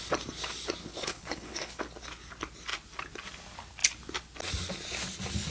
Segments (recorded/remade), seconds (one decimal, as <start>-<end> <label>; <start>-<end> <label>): 0.0-0.8 recorded; 0.8-1.8 remade; 1.8-5.5 recorded